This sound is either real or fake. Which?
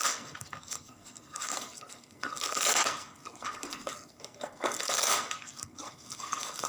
fake